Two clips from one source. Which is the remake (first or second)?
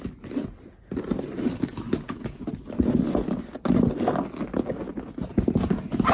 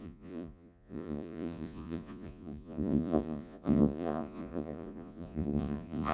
second